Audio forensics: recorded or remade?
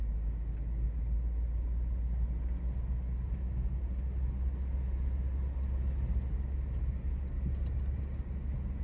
recorded